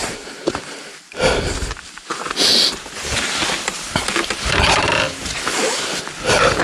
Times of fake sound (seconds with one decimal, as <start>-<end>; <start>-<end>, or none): none